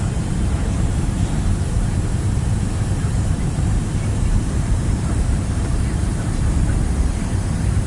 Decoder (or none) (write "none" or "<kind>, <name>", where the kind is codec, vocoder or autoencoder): vocoder, BigVGAN v2